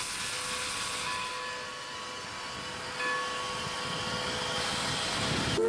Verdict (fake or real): real